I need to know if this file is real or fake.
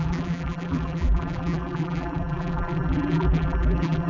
fake